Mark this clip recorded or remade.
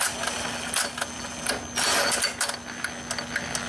recorded